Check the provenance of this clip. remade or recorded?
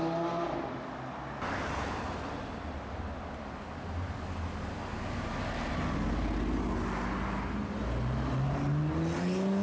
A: recorded